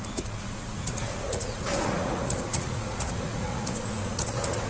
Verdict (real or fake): fake